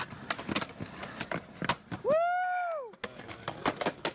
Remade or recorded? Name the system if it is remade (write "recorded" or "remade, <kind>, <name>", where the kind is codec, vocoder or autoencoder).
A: recorded